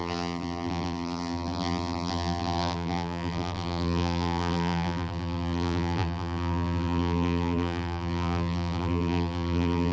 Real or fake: fake